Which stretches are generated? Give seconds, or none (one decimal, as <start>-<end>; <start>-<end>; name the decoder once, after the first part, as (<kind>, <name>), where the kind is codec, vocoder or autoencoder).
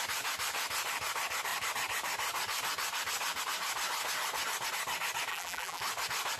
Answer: 5.3-5.8 (vocoder, BigVGAN v2)